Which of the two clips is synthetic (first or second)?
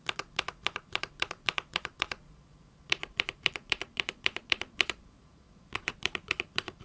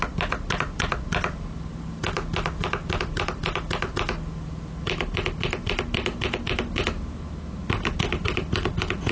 first